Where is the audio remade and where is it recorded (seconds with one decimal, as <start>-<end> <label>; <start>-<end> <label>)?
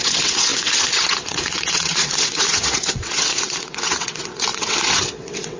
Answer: 0.0-5.6 remade